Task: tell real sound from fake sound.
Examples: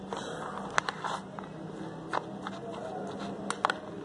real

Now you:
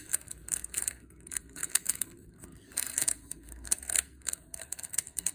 fake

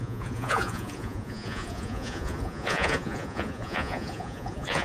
fake